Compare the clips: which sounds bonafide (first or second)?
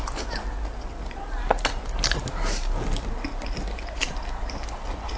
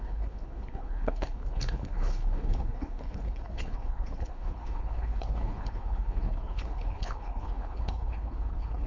first